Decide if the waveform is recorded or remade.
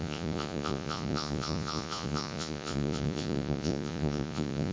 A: remade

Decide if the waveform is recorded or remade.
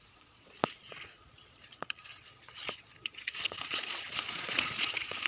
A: remade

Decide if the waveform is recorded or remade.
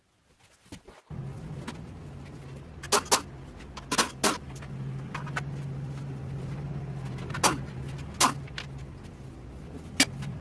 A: recorded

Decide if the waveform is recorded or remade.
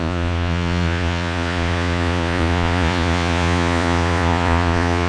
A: remade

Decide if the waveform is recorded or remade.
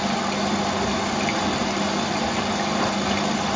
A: recorded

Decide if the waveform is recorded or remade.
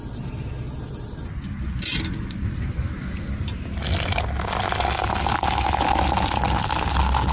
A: recorded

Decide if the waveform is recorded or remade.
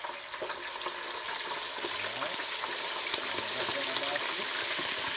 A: recorded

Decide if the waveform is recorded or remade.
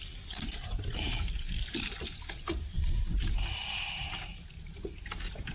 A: recorded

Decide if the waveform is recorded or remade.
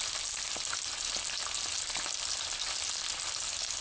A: recorded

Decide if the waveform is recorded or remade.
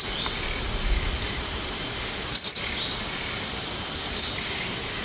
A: recorded